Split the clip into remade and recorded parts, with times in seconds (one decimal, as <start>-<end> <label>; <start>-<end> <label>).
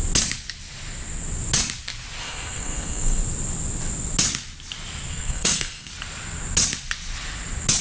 0.0-2.2 recorded; 2.2-3.2 remade; 3.2-5.1 recorded; 5.1-5.9 remade; 5.9-7.8 recorded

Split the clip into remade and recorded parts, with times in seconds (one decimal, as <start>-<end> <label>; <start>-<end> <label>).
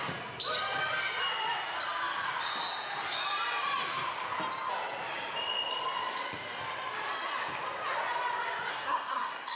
0.0-8.7 recorded; 8.7-9.6 remade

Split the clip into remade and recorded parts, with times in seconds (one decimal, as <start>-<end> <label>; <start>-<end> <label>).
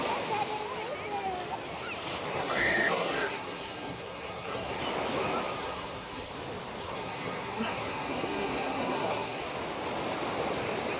0.0-2.3 recorded; 2.3-4.8 remade; 4.8-5.6 recorded; 5.6-6.3 remade; 6.3-6.8 recorded; 6.8-9.4 remade; 9.4-11.0 recorded